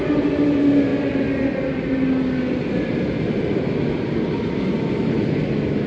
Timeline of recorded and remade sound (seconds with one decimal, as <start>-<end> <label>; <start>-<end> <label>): 0.0-5.9 recorded